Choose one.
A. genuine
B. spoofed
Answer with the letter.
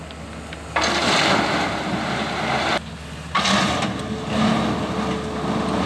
A